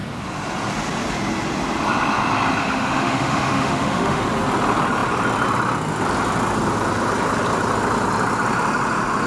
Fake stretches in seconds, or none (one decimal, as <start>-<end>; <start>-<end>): 2.6-4.2